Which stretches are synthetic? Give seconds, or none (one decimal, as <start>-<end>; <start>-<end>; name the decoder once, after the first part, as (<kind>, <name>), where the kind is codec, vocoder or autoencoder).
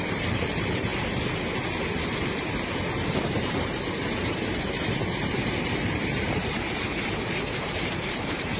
0.0-0.9 (vocoder, BigVGAN v2); 3.2-8.6